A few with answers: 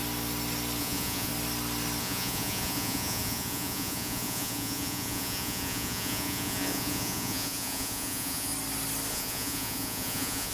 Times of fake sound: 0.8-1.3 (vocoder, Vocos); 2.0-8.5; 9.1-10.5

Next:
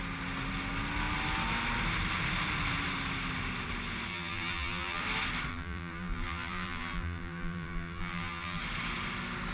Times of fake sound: 4.1-5.0 (vocoder, BigVGAN v2); 5.5-8.6

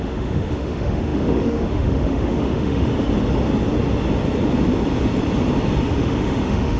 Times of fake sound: 0.0-2.9 (autoencoder, DAC-VAE); 6.0-6.8